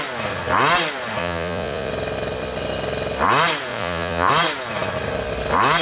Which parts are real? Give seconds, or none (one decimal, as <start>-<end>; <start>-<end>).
0.0-1.2; 1.9-3.7; 4.3-5.8